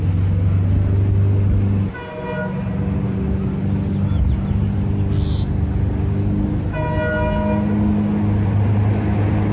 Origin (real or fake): real